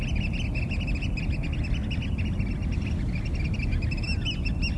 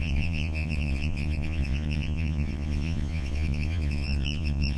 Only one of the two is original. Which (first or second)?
first